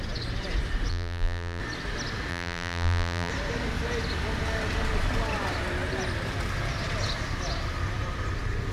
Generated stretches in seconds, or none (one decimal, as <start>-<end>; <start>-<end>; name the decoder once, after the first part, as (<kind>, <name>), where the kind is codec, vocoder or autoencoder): 0.9-1.6 (vocoder, BigVGAN v2); 2.3-3.3